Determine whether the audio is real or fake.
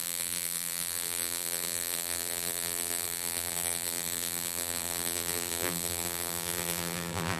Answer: fake